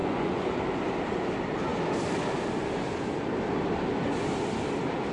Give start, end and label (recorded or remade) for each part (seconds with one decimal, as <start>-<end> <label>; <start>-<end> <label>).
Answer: 0.0-0.6 remade; 0.6-5.1 recorded